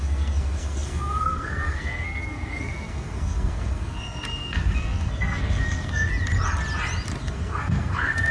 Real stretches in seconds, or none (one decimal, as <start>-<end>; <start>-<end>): 6.1-7.2